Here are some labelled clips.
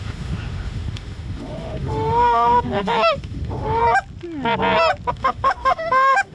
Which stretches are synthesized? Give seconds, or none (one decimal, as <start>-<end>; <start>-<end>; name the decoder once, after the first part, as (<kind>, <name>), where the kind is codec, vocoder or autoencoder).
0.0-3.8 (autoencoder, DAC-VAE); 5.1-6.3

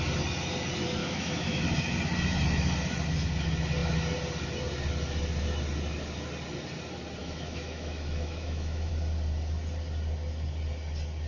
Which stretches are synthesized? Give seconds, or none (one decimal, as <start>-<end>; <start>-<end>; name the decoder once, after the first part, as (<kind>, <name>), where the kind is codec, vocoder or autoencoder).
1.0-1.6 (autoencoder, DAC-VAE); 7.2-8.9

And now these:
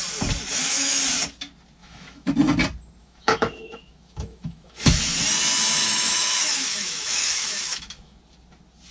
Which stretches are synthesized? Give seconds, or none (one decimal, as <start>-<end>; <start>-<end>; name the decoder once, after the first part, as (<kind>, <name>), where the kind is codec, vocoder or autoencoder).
0.5-1.0 (autoencoder, DAC-VAE); 1.8-2.3; 3.0-5.0; 5.8-8.2

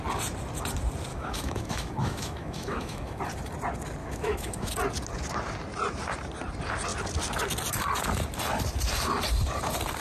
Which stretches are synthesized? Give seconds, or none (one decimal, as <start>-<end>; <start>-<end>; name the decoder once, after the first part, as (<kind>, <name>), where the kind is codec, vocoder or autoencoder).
1.1-3.2 (autoencoder, DAC-VAE); 4.0-4.7